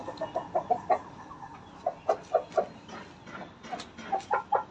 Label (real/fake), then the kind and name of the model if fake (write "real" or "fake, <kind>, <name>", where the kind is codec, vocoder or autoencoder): real